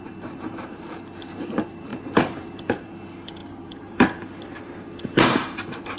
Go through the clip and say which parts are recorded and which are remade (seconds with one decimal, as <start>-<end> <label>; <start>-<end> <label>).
0.0-6.0 remade